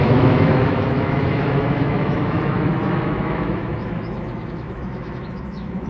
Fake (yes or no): yes